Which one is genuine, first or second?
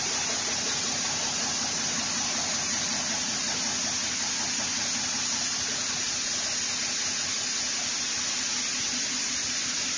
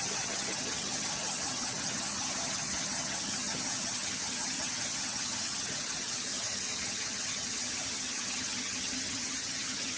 first